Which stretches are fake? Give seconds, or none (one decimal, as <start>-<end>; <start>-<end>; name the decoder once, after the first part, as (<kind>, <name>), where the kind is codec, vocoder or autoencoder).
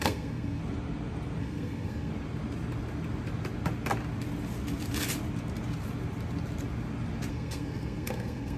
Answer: 0.0-0.6 (codec, SNAC); 1.4-2.1; 7.3-8.6